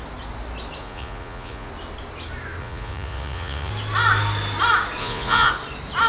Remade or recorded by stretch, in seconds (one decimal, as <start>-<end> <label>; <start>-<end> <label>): 0.0-0.8 recorded; 0.8-1.7 remade; 1.7-2.6 recorded; 2.6-3.7 remade; 3.7-5.0 recorded; 5.0-5.5 remade; 5.5-6.1 recorded